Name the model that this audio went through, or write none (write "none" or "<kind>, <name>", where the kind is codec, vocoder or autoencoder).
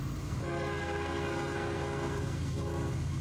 codec, SNAC